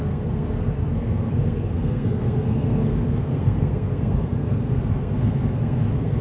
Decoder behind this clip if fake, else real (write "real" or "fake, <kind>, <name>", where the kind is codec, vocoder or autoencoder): fake, codec, SNAC